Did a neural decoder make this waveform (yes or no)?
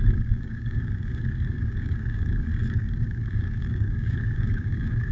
yes